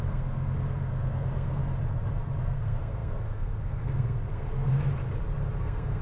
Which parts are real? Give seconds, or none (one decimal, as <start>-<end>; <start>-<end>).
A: 1.6-2.4; 4.9-5.6